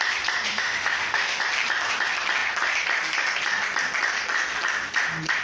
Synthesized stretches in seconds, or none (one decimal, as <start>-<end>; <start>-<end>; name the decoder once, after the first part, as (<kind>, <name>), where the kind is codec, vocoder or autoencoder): 0.5-1.4 (autoencoder, DAC-VAE)